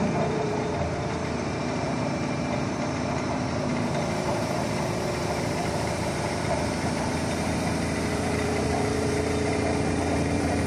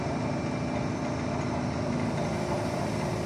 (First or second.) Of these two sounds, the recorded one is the second